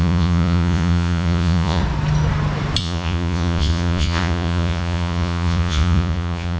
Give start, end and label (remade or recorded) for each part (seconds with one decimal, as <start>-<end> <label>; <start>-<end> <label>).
0.0-1.8 remade; 1.8-2.8 recorded; 2.8-6.6 remade